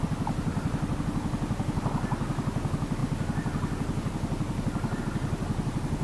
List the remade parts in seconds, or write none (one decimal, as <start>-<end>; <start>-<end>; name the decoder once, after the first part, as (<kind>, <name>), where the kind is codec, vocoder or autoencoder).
none